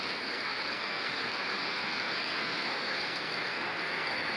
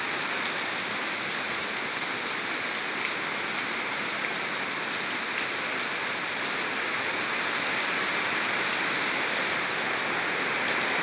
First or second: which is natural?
second